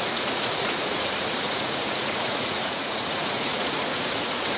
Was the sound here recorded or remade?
remade